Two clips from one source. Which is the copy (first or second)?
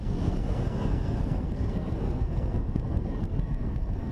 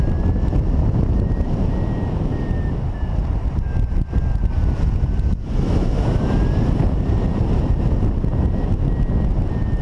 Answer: first